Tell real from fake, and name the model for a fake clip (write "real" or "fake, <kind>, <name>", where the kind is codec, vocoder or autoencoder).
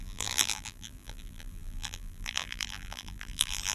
fake, vocoder, BigVGAN v2